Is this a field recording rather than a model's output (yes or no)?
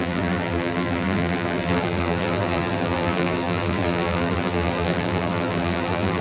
no